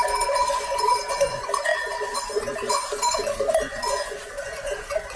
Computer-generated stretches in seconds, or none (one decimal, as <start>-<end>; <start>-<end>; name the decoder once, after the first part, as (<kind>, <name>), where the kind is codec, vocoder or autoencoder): 0.0-5.2 (vocoder, Vocos)